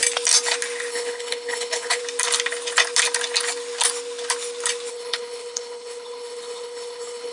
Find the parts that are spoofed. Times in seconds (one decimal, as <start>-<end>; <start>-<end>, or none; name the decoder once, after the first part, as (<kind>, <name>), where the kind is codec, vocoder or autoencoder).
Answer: 0.9-2.0 (codec, HILCodec); 4.9-7.3